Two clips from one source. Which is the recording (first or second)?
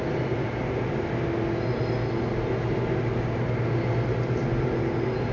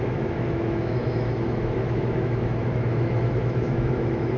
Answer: first